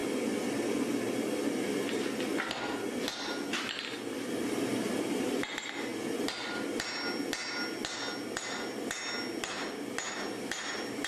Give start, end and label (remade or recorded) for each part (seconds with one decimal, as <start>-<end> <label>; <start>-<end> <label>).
0.0-11.1 recorded